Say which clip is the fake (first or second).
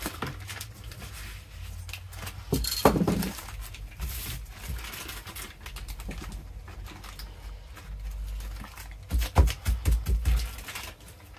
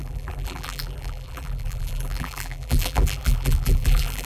second